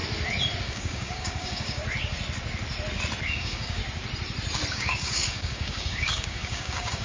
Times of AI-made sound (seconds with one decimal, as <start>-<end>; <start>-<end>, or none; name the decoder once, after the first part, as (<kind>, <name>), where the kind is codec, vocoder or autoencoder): 0.6-1.8 (codec, DAC); 3.3-3.8; 4.7-7.0